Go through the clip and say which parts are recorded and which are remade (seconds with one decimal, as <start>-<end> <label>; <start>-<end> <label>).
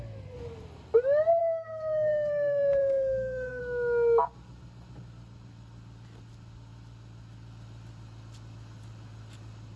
0.0-1.4 recorded; 1.4-3.6 remade; 3.6-9.8 recorded